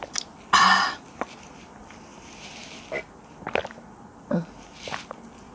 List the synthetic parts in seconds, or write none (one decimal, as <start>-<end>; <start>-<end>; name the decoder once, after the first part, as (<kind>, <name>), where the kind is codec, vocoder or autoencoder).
1.8-2.7 (vocoder, BigVGAN v2); 3.6-4.9